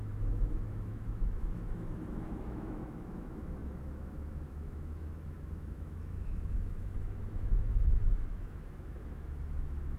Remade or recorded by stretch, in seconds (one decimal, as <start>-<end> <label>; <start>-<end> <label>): 0.0-10.0 remade